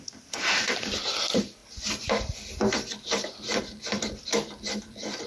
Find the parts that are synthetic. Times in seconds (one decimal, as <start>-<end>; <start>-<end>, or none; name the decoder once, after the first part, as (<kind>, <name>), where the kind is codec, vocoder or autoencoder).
0.0-1.6 (vocoder, BigVGAN v2); 4.8-5.3

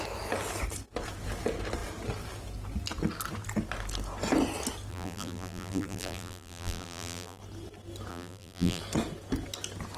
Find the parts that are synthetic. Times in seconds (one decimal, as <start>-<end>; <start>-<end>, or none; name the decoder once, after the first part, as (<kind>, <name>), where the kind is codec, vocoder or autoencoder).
4.9-7.4 (vocoder, BigVGAN v2); 8.1-8.8